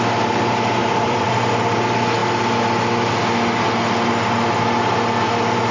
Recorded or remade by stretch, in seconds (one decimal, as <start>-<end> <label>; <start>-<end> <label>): 0.0-0.8 recorded; 0.8-1.3 remade; 1.3-5.7 recorded